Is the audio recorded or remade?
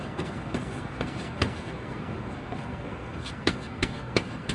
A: remade